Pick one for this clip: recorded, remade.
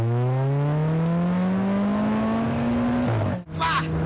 recorded